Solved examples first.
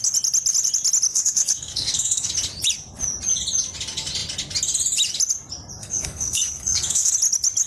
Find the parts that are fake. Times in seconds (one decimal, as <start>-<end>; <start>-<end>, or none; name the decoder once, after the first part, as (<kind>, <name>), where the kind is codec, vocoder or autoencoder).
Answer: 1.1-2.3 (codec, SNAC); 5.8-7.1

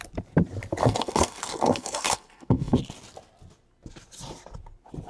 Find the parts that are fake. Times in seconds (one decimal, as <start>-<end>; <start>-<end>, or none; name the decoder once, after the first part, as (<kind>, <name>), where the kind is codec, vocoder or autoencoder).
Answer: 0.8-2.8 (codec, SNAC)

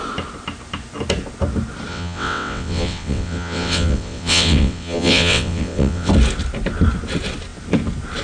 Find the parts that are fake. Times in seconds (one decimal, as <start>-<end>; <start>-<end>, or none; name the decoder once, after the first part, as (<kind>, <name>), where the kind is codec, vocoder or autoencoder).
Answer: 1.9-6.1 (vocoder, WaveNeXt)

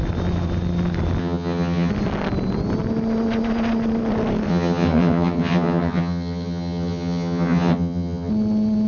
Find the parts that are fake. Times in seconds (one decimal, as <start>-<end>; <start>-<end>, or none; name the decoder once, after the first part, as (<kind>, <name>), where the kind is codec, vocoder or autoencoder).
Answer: 1.2-1.9 (vocoder, HiFi-GAN); 4.5-8.3

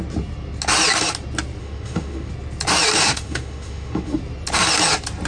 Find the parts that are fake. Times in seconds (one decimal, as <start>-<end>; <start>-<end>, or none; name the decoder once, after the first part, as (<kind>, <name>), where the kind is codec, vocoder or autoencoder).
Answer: 1.6-2.3 (autoencoder, DAC-VAE); 3.0-4.2

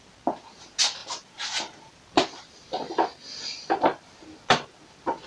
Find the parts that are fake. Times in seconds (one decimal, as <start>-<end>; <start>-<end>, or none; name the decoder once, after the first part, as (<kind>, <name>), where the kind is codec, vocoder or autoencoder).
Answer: 1.0-4.2 (vocoder, BigVGAN v2)